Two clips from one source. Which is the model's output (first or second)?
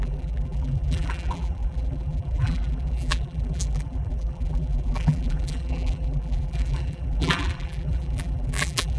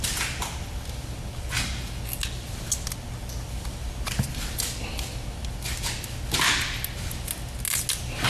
first